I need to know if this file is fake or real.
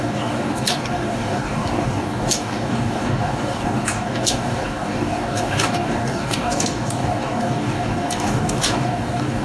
fake